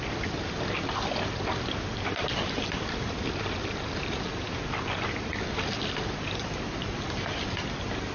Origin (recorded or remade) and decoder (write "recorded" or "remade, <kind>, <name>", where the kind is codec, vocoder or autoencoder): recorded